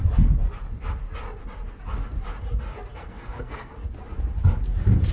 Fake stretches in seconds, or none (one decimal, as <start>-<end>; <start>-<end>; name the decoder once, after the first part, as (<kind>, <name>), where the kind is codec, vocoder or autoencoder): 2.9-3.7 (codec, SNAC)